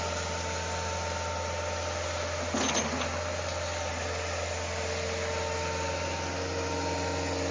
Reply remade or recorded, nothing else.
recorded